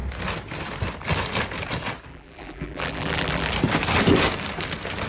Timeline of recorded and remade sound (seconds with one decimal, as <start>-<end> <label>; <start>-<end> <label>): 0.0-2.1 recorded; 2.1-3.5 remade; 3.5-5.1 recorded